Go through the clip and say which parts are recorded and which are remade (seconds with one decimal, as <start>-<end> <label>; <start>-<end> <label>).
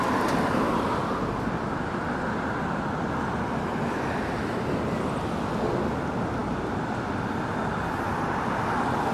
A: 0.0-9.1 recorded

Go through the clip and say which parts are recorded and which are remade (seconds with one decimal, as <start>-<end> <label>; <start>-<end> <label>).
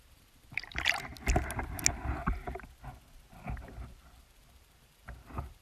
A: 0.0-1.1 remade; 1.1-4.2 recorded; 4.2-5.6 remade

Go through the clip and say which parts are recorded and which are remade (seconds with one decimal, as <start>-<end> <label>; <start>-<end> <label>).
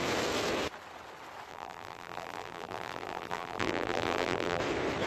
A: 0.0-1.5 recorded; 1.5-4.6 remade; 4.6-5.1 recorded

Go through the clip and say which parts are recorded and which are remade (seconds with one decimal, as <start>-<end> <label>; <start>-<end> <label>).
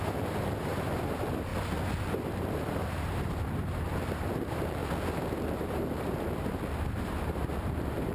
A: 0.0-1.5 remade; 1.5-2.0 recorded; 2.0-4.8 remade; 4.8-5.5 recorded; 5.5-8.1 remade